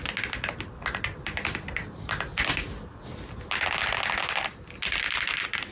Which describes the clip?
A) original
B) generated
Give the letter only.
A